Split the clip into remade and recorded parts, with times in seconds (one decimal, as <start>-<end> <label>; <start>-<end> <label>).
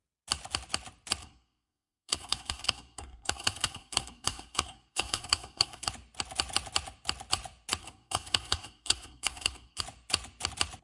0.0-1.2 recorded; 1.2-5.9 remade; 5.9-7.8 recorded; 7.8-9.8 remade; 9.8-10.8 recorded